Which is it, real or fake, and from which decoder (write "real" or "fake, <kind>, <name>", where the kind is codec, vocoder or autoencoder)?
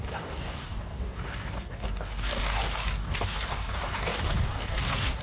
fake, codec, DAC